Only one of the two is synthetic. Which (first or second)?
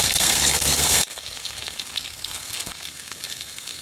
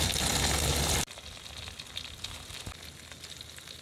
first